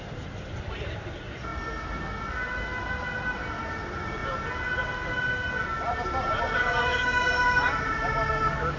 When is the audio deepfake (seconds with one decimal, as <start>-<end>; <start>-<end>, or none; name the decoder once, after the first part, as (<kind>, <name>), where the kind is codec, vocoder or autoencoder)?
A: 0.0-1.5 (vocoder, BigVGAN v2); 2.8-4.2; 5.6-6.9